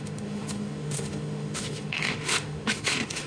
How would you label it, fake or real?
fake